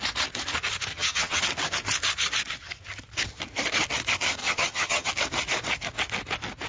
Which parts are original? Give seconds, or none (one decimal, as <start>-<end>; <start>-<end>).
0.0-0.9; 1.4-4.4; 5.1-6.7